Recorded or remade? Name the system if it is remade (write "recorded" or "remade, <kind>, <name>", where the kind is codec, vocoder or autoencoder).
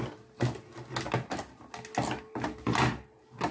recorded